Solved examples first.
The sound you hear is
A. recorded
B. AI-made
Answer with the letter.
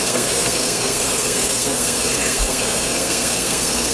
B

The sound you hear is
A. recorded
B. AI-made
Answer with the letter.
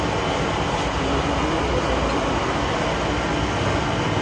A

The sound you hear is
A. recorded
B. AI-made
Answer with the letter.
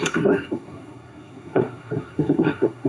B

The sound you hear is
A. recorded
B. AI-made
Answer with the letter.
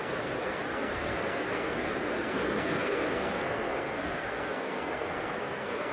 B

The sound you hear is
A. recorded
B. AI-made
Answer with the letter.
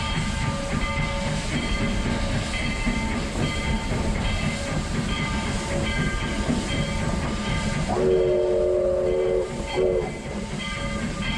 A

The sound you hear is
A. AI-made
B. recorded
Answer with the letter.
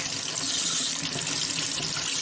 B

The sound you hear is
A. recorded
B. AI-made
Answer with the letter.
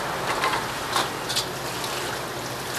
A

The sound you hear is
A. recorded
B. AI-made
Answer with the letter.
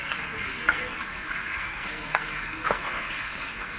B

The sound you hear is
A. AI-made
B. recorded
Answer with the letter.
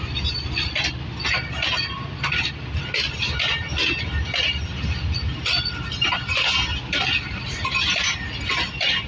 B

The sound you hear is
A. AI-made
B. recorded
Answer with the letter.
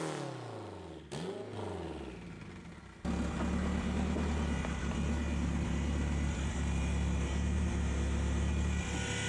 B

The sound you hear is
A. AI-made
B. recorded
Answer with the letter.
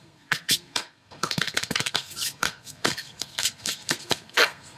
A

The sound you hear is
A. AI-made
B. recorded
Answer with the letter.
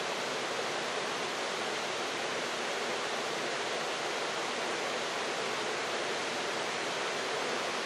B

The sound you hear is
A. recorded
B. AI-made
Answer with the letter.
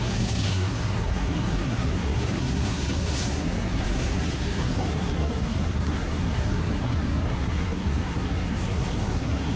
B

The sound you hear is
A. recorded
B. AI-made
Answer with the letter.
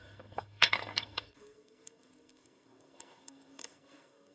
B